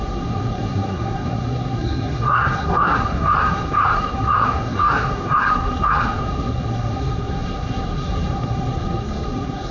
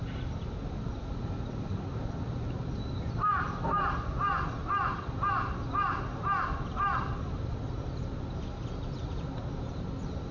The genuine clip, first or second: second